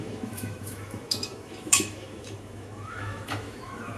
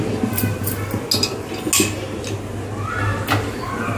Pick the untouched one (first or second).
second